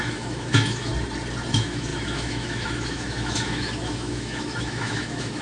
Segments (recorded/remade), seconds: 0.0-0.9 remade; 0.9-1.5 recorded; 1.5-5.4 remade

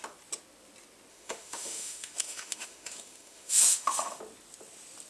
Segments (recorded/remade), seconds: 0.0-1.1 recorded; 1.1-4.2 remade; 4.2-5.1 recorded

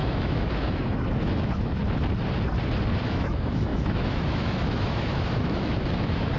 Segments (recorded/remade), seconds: 0.0-1.8 remade; 1.8-3.0 recorded; 3.0-6.4 remade

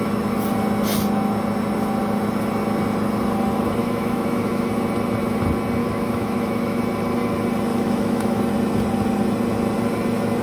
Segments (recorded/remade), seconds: 0.0-3.8 recorded; 3.8-4.7 remade; 4.7-5.8 recorded; 5.8-6.8 remade; 6.8-7.7 recorded; 7.7-8.4 remade; 8.4-10.4 recorded

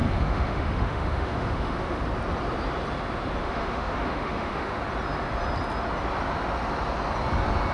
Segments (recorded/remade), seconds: 0.0-2.0 remade; 2.0-3.4 recorded; 3.4-4.8 remade; 4.8-7.7 recorded

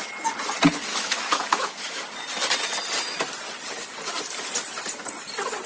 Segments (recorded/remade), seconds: 0.0-0.9 recorded; 0.9-2.0 remade; 2.0-5.7 recorded